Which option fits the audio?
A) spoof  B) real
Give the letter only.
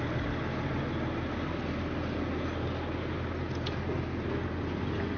B